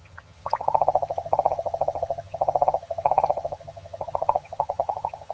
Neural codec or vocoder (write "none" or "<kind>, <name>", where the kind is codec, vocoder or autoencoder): vocoder, HiFi-GAN